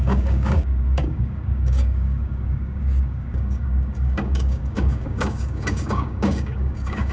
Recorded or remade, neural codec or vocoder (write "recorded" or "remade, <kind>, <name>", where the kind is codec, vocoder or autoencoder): remade, codec, DAC